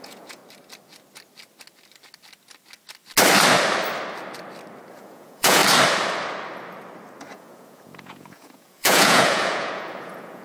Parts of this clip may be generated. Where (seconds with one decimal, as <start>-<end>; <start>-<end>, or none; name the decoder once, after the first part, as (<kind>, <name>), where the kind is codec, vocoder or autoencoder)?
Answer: 0.0-0.4 (vocoder, Vocos); 4.9-5.6; 7.2-10.4